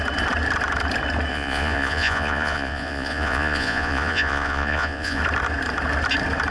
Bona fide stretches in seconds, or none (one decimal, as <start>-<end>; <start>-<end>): 0.0-1.3; 5.2-6.5